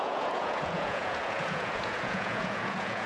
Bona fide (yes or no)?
no